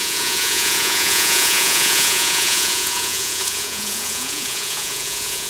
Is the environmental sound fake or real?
fake